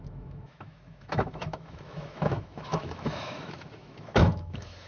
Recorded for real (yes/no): no